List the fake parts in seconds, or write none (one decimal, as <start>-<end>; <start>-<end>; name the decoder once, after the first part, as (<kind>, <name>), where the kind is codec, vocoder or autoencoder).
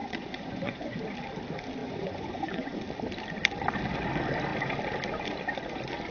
0.0-1.0 (vocoder, Vocos); 1.8-2.8